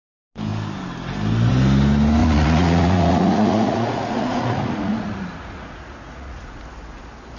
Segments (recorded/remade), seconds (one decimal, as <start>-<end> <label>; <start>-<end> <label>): 0.0-2.2 recorded; 2.2-6.6 remade; 6.6-7.4 recorded